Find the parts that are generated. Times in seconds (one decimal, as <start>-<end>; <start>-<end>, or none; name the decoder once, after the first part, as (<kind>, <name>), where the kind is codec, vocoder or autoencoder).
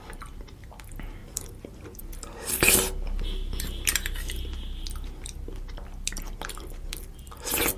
1.2-2.0 (vocoder, BigVGAN v2)